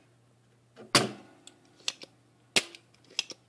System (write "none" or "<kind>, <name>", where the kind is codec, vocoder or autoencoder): none